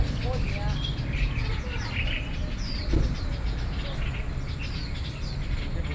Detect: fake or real real